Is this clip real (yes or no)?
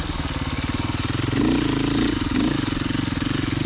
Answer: yes